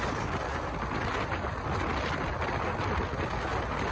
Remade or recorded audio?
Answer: recorded